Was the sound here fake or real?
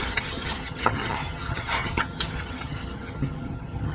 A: fake